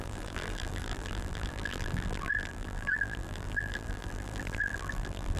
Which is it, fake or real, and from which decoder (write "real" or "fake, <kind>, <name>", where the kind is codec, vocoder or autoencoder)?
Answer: fake, vocoder, BigVGAN v2